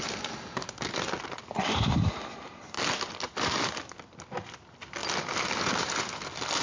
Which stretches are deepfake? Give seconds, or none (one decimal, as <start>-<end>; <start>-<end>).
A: none